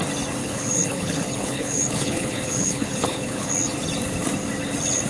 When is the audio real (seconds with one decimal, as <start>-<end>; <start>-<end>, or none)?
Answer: 0.0-0.4; 3.5-5.1